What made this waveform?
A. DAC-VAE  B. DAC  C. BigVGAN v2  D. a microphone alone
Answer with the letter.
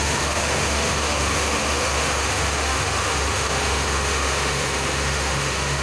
A